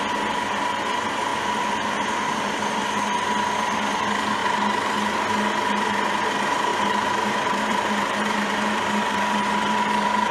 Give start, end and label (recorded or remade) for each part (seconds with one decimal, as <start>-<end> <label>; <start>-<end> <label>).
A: 0.0-6.7 recorded; 6.7-10.3 remade